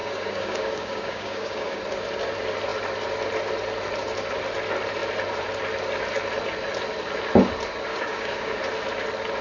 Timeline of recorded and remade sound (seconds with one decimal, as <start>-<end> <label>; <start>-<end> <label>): 0.0-1.8 remade; 1.8-7.9 recorded; 7.9-8.6 remade; 8.6-9.4 recorded

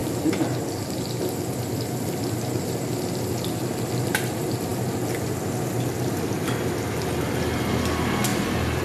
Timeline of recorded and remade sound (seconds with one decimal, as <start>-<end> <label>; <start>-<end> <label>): 0.0-8.3 recorded; 8.3-8.8 remade